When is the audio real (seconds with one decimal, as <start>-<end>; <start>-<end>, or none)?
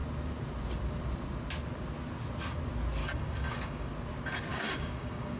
0.0-3.0; 3.9-4.5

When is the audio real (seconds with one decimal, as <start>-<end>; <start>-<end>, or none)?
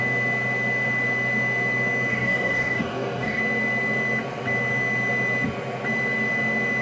0.0-2.1; 3.4-6.8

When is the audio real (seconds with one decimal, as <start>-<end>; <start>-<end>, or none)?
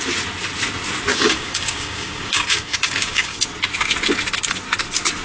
0.0-1.1; 3.4-5.2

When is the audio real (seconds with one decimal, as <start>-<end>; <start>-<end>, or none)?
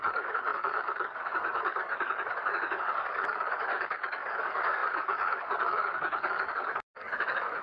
none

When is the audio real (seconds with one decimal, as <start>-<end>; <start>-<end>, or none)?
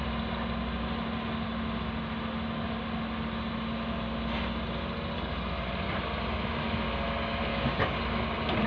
0.0-7.5; 8.0-8.7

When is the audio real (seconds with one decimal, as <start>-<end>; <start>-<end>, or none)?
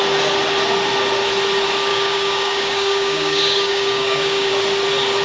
0.0-1.9; 4.5-5.2